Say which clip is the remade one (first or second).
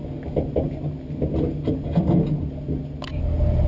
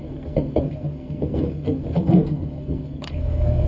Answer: second